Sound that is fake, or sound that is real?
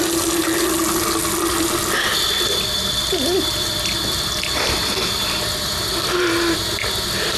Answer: real